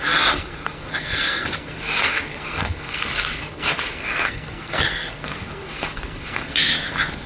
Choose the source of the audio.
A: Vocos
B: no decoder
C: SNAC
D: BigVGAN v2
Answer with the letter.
C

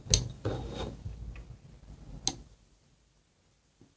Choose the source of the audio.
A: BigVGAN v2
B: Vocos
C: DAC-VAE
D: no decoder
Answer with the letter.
D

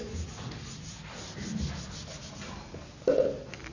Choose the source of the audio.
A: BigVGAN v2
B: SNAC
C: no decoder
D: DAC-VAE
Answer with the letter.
C